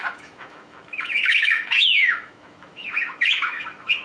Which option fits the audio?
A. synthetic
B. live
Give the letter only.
A